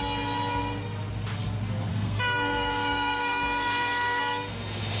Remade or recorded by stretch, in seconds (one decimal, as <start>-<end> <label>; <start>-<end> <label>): 0.0-1.9 recorded; 1.9-4.2 remade; 4.2-5.0 recorded